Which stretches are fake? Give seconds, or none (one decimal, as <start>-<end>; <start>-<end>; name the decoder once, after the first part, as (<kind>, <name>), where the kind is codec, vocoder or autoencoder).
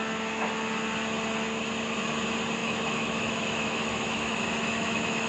2.6-5.3 (autoencoder, DAC-VAE)